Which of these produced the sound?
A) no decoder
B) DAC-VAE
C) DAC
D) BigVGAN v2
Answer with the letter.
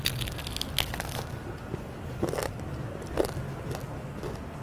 A